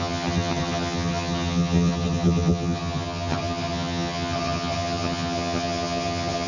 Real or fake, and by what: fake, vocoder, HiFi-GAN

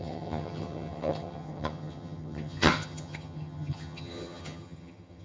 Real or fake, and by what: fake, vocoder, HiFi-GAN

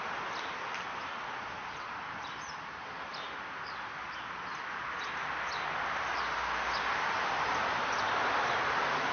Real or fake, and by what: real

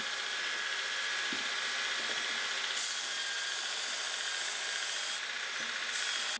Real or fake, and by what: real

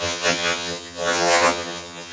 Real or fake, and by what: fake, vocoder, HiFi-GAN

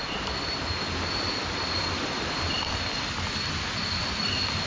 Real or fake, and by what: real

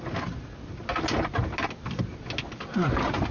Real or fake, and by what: real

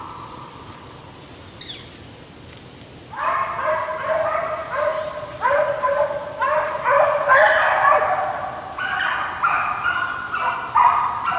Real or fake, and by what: real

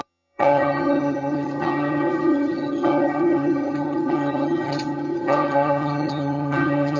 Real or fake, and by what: fake, vocoder, HiFi-GAN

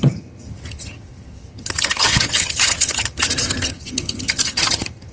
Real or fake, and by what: fake, vocoder, HiFi-GAN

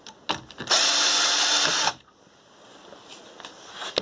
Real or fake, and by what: real